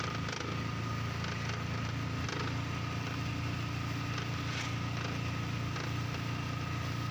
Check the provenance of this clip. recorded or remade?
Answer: recorded